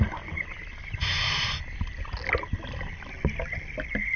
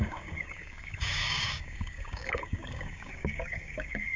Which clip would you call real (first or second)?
first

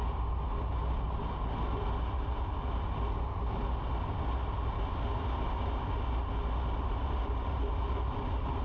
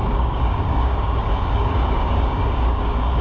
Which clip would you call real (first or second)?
first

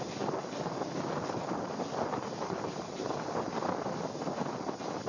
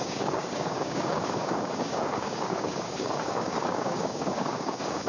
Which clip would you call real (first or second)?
first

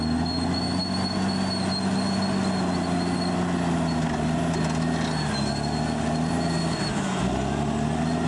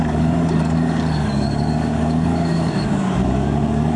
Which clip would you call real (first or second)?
first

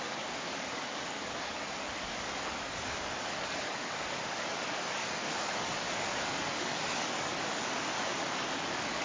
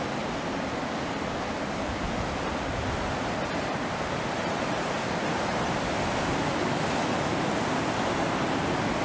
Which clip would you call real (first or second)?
second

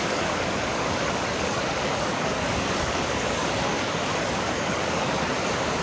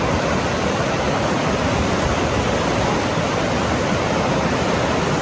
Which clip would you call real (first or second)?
second